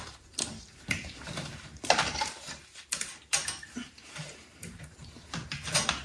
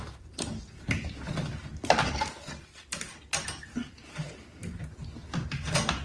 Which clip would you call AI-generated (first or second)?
first